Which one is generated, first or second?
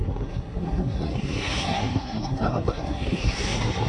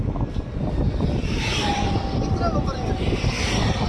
first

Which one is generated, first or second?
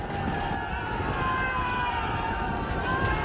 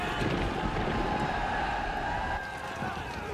second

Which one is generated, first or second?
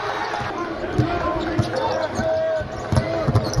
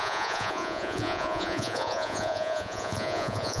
second